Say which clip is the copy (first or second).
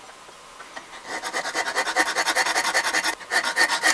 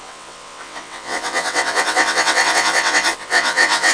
second